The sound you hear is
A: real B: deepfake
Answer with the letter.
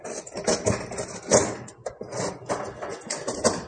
A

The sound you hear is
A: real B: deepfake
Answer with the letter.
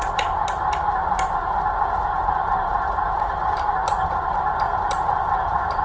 A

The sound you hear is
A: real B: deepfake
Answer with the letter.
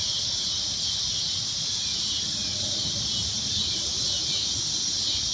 A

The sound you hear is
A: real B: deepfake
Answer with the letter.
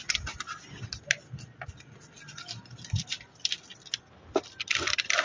A